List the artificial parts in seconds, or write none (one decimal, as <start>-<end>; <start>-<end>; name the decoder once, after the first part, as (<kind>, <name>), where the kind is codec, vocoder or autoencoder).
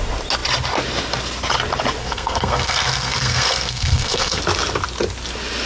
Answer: 2.0-4.4 (codec, SNAC)